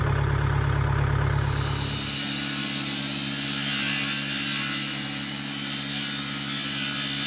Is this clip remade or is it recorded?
recorded